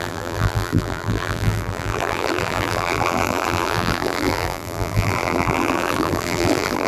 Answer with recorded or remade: remade